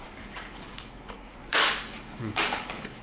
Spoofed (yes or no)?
yes